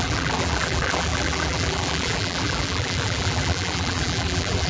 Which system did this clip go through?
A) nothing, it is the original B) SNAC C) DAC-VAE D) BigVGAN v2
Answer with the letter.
D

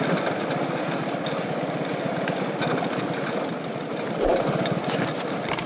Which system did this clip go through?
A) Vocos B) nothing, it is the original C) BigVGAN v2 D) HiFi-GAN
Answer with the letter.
B